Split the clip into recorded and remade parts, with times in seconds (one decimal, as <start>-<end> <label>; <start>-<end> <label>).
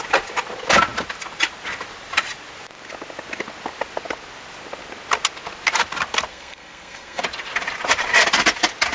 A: 0.0-6.3 recorded; 6.3-7.2 remade; 7.2-8.9 recorded